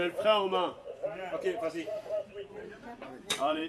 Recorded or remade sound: remade